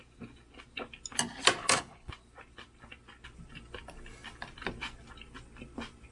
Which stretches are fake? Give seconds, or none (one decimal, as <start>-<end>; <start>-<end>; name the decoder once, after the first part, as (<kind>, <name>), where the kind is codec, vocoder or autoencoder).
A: 1.6-2.1 (codec, HILCodec)